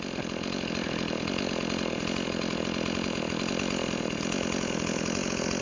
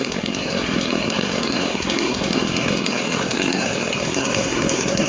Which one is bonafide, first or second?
first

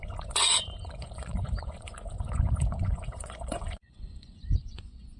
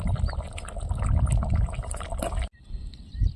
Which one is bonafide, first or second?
second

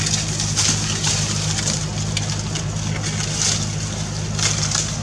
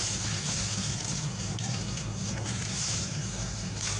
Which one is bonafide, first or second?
first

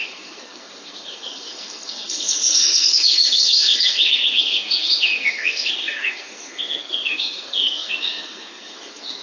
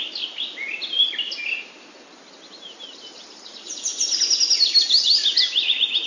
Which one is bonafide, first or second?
second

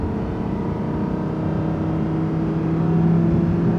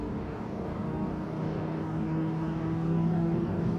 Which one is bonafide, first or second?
first